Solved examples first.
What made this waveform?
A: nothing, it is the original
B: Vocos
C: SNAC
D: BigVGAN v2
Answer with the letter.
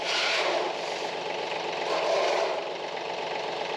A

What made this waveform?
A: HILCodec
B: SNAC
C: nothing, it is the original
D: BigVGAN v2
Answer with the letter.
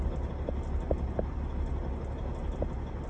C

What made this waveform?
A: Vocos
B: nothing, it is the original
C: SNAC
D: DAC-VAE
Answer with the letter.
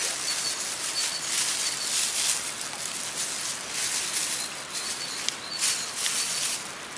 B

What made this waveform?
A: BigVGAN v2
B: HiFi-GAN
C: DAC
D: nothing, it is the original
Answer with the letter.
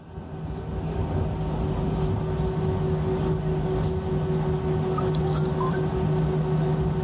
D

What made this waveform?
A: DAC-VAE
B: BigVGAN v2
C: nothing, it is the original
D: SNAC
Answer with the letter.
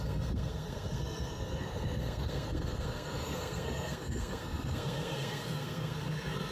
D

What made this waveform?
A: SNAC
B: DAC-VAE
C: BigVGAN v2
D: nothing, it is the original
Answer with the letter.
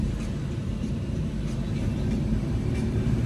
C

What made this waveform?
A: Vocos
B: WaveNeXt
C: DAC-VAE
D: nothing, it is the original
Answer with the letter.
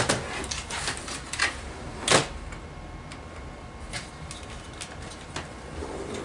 D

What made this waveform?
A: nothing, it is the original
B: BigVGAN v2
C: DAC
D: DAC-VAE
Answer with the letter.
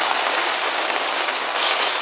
C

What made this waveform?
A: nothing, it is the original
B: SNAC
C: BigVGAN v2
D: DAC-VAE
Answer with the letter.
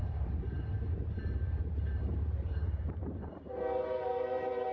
C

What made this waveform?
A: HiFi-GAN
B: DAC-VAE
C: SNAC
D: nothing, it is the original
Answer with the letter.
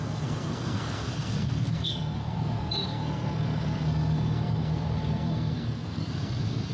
C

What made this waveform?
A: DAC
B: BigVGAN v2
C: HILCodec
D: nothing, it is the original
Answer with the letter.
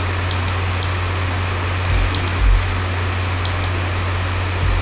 D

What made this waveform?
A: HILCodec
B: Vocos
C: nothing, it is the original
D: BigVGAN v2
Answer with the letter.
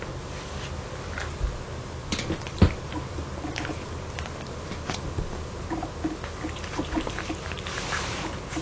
C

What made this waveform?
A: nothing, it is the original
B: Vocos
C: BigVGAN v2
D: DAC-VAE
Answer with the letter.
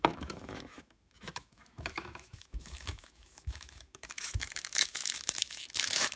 D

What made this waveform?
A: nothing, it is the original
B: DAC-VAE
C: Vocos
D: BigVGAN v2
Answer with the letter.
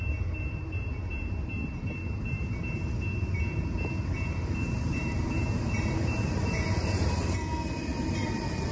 D